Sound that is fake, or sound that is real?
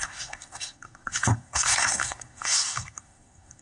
fake